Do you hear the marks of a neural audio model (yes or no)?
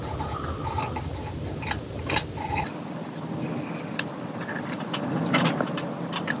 no